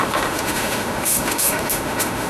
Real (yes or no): no